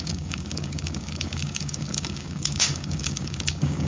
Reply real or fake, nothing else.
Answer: fake